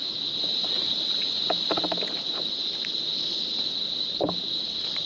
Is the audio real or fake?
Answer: real